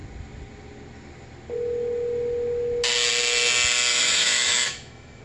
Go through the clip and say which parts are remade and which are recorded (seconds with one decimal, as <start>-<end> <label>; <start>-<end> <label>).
0.0-3.9 recorded; 3.9-5.2 remade